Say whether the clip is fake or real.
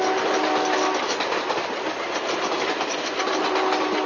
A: real